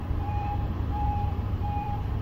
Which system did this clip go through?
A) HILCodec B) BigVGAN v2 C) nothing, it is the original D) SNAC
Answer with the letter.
B